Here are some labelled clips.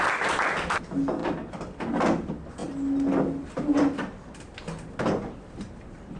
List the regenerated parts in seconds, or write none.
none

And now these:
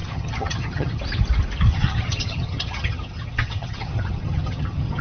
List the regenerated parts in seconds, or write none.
0.0-1.0 (vocoder, HiFi-GAN); 1.7-5.0

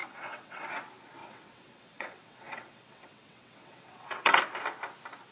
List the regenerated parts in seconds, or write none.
0.0-0.7 (vocoder, WaveNeXt); 1.2-4.4

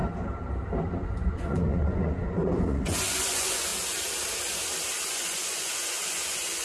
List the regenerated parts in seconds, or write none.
0.8-3.7 (vocoder, Vocos); 5.1-6.6

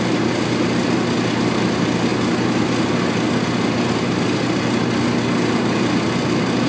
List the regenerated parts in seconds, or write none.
none

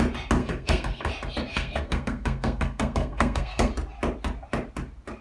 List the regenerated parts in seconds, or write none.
0.4-1.1 (codec, SNAC); 1.5-3.7

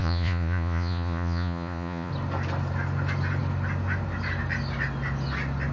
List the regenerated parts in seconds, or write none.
0.0-2.1 (vocoder, Vocos)

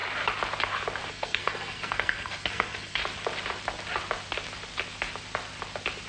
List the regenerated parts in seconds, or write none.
1.1-3.0 (codec, SNAC)